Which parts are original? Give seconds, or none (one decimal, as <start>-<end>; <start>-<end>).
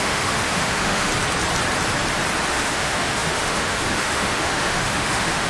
1.1-2.5